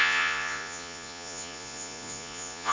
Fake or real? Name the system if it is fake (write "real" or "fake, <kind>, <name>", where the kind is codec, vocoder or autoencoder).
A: fake, vocoder, Vocos